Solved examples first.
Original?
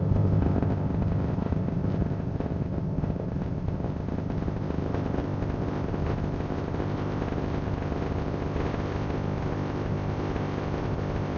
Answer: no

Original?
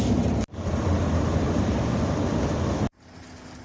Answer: yes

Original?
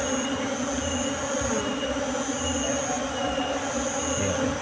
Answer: yes